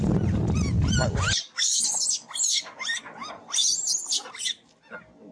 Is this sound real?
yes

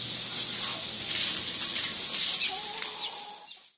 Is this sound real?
yes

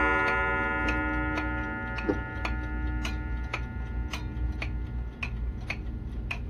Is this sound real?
yes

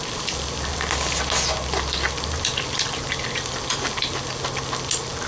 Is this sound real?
yes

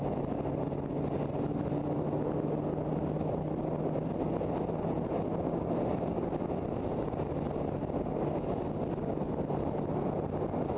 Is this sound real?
yes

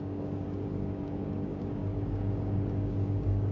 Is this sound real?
no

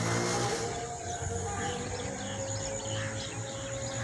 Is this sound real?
yes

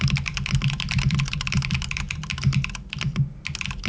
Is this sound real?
yes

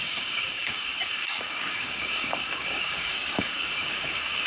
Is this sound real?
no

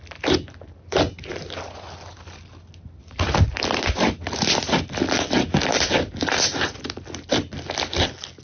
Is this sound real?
yes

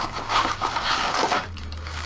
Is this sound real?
no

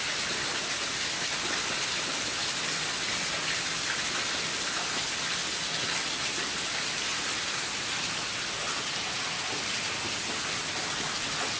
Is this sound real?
yes